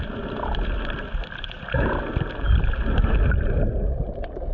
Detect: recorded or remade recorded